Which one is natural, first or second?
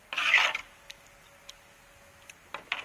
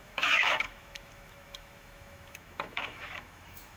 first